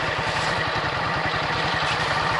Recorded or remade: remade